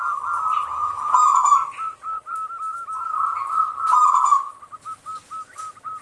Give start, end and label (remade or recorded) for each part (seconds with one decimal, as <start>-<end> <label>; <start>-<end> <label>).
0.0-6.0 recorded